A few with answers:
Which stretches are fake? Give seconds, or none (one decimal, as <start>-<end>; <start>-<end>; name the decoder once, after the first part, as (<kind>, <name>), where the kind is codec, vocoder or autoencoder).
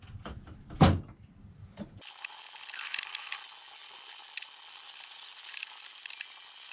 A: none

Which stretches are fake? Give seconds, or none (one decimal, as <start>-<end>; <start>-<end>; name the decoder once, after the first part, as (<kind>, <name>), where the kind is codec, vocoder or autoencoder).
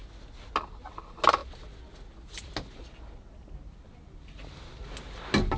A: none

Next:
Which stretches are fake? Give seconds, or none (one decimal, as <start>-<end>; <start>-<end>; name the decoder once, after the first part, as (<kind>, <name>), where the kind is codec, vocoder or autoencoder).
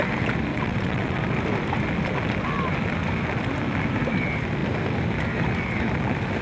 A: 0.5-1.2 (vocoder, WaveNeXt)